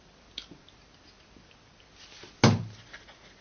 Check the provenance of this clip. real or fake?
real